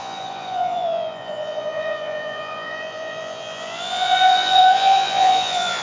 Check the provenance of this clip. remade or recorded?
remade